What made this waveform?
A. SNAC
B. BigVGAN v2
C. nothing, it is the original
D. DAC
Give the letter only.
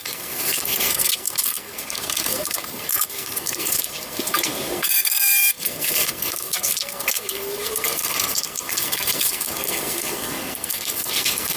A